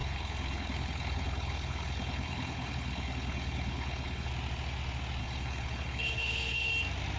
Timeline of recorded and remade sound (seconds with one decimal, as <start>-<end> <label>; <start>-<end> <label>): 0.0-4.3 remade; 4.3-5.2 recorded; 5.2-6.7 remade; 6.7-7.2 recorded